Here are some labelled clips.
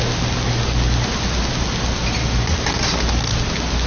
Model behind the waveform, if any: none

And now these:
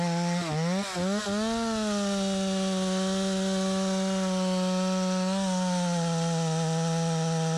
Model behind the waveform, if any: none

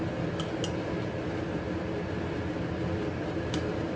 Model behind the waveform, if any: none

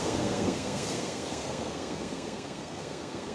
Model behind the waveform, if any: codec, SNAC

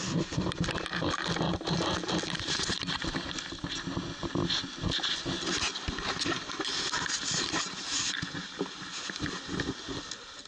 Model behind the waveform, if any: none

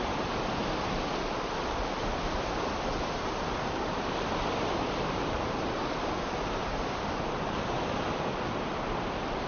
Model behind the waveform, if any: none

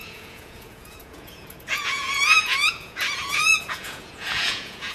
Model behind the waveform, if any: vocoder, Vocos